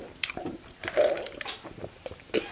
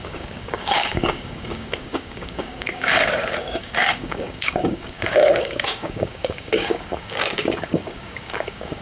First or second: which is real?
first